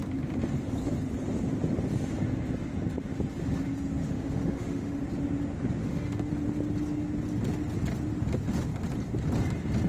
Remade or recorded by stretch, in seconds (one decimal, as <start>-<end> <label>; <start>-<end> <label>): 0.0-4.0 recorded; 4.0-5.0 remade; 5.0-5.8 recorded; 5.8-6.3 remade; 6.3-9.9 recorded